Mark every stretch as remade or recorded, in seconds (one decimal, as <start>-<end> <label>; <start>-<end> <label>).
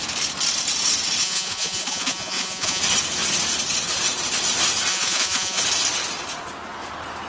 0.0-1.2 recorded; 1.2-2.8 remade; 2.8-4.9 recorded; 4.9-5.6 remade; 5.6-7.3 recorded